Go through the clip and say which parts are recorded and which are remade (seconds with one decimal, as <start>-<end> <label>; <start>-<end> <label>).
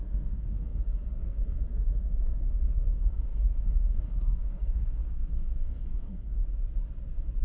0.0-6.4 remade; 6.4-7.4 recorded